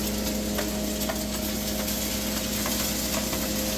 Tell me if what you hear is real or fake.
real